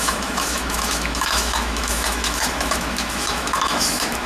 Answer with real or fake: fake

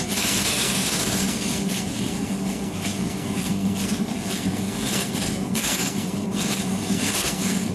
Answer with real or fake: fake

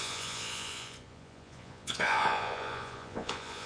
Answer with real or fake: fake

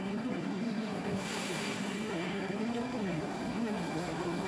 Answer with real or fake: fake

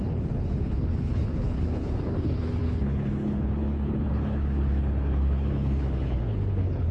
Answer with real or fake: fake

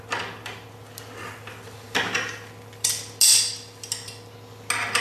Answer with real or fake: real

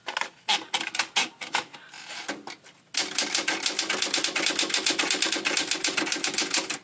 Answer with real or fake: real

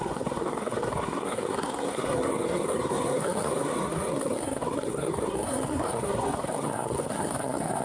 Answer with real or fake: fake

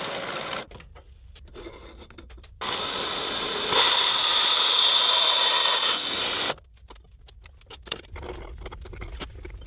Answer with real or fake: real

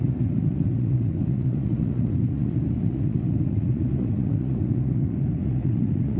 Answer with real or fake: fake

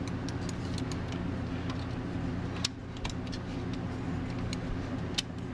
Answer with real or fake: real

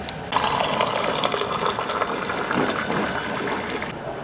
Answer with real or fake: real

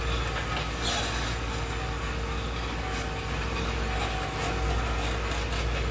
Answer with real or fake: real